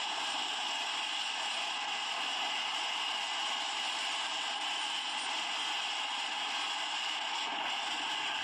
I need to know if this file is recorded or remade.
recorded